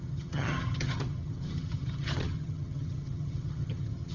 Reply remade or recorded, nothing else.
remade